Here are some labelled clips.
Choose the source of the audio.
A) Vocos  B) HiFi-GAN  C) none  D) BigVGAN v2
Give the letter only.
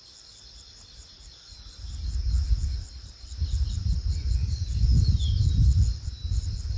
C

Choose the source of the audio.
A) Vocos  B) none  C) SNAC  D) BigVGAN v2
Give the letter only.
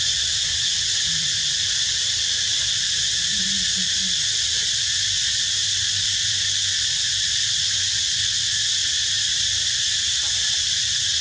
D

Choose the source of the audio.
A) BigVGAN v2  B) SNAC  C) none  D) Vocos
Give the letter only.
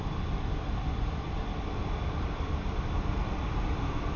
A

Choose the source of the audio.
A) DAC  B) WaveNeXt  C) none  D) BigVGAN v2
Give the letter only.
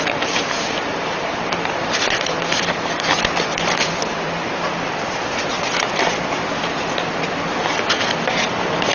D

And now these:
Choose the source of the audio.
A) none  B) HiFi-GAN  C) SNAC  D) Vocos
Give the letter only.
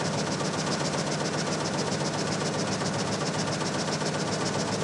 A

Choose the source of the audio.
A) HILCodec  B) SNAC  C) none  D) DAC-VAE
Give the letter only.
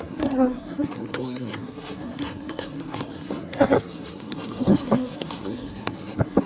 B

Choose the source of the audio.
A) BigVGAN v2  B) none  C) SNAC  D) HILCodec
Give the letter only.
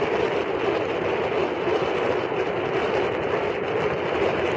B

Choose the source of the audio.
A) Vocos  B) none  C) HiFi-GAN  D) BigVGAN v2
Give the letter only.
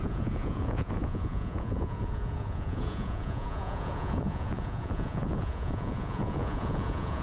A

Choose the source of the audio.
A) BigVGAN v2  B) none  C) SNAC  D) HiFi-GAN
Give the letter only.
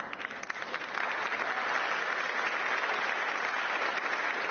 B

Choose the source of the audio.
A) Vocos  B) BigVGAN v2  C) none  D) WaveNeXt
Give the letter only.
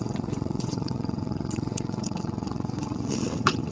D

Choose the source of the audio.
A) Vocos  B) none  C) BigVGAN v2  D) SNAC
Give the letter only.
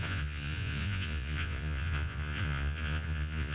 A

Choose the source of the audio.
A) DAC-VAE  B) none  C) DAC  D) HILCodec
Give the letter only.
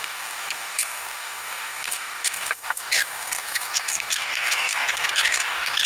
C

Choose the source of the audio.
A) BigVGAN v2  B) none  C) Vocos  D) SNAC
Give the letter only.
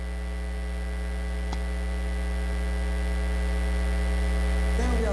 B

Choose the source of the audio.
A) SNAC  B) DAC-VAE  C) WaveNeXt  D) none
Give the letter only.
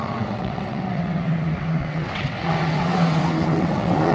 C